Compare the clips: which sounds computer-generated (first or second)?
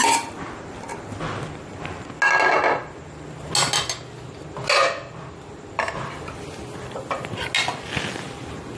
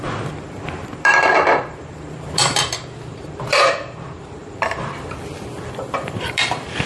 second